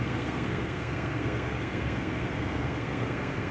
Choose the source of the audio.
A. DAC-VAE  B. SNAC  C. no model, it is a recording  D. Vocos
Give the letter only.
B